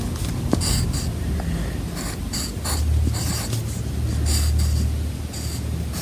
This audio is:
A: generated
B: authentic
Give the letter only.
B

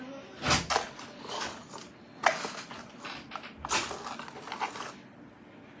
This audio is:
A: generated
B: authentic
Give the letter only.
B